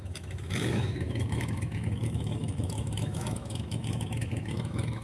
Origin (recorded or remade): remade